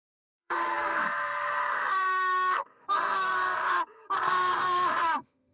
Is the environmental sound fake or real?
fake